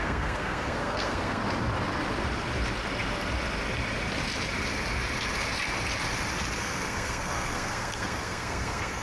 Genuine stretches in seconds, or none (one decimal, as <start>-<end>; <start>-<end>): 1.4-6.6